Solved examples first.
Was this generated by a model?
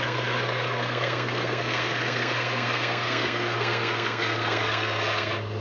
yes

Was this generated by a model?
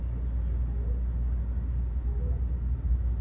no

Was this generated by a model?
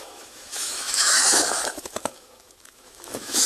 yes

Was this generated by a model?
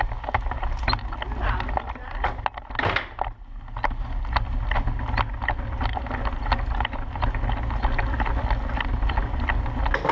no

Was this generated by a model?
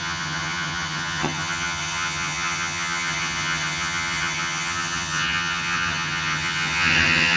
yes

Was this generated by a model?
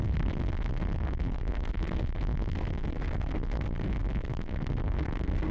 yes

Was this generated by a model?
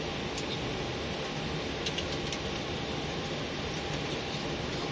no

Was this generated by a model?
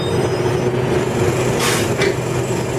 no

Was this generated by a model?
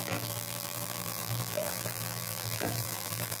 yes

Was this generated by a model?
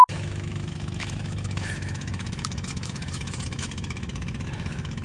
yes